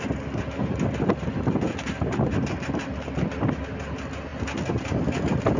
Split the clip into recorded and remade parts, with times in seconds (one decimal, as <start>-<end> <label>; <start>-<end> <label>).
0.0-5.6 recorded